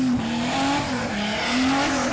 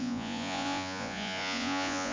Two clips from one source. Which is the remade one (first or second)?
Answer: second